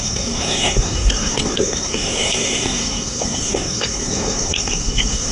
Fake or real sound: fake